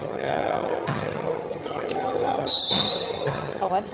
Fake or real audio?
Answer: fake